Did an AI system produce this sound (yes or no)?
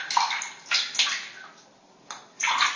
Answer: no